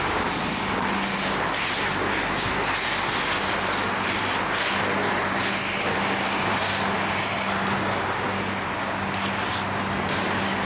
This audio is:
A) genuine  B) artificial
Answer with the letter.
A